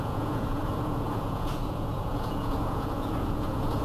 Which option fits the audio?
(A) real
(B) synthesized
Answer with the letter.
B